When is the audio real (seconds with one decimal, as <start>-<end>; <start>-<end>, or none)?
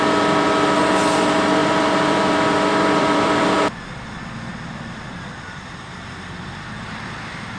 0.0-1.6; 3.5-4.5; 5.2-7.6